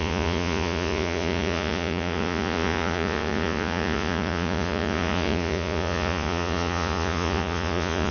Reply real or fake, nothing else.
fake